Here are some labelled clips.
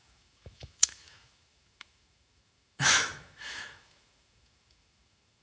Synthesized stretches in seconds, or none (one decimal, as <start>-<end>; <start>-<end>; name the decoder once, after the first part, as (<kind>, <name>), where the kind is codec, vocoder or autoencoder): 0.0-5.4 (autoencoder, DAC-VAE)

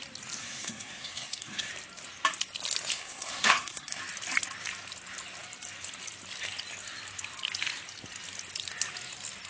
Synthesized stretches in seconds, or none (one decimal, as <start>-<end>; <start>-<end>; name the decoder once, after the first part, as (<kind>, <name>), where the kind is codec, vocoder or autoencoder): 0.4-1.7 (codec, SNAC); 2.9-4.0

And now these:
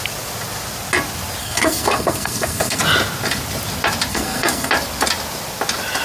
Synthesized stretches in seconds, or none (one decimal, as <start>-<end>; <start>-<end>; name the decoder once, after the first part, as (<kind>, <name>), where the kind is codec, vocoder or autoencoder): 1.4-2.8 (codec, SNAC); 4.1-4.7